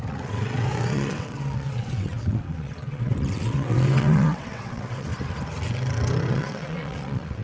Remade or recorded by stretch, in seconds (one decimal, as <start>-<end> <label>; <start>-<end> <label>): 0.0-5.1 remade; 5.1-6.3 recorded; 6.3-7.4 remade